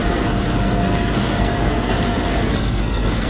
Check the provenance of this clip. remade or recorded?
remade